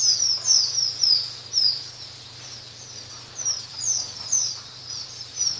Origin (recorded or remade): remade